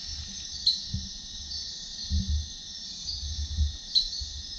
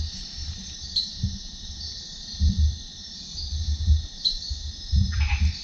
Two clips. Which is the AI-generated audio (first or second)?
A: second